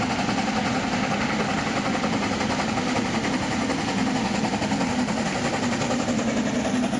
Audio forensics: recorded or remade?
recorded